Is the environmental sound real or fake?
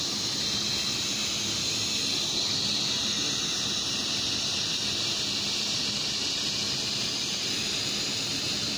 real